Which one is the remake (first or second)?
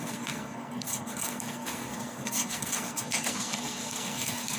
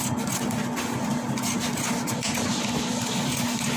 first